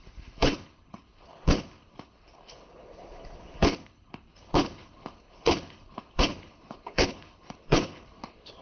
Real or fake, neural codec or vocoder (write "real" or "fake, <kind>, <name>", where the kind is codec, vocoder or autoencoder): fake, codec, HILCodec